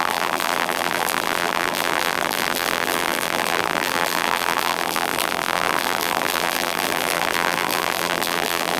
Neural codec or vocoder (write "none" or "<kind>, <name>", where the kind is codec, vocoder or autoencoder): vocoder, BigVGAN v2